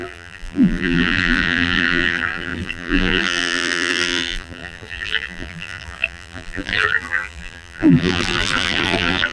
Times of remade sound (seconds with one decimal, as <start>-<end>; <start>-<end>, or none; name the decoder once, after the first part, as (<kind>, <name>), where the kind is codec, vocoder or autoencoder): 0.0-9.3 (vocoder, BigVGAN v2)